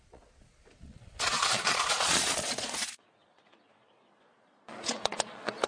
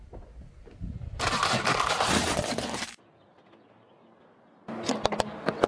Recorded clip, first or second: second